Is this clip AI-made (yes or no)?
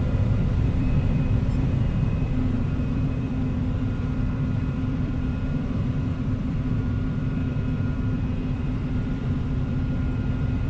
yes